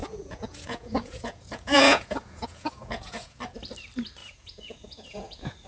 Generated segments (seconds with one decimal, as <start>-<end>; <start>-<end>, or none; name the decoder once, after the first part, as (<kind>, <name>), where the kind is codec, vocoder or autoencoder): 0.0-3.4 (vocoder, Vocos); 4.2-5.7